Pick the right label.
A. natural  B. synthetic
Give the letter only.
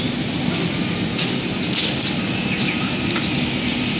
A